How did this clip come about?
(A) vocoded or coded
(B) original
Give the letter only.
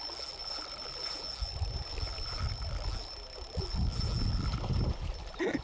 B